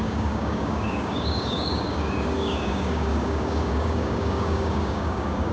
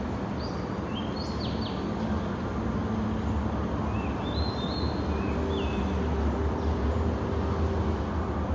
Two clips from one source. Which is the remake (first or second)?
first